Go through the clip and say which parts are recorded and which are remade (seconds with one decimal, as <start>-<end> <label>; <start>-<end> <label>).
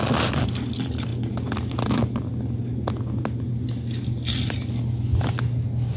0.0-6.0 recorded